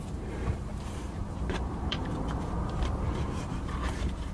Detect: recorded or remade remade